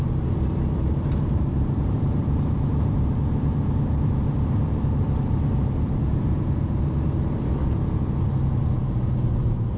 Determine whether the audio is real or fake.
fake